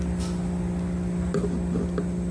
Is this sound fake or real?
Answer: real